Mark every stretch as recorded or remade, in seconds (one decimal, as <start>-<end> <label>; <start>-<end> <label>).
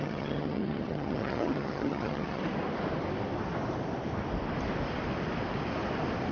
0.0-2.4 remade; 2.4-6.3 recorded